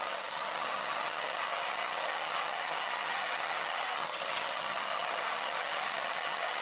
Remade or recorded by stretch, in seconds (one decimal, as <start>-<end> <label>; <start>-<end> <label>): 0.0-6.6 remade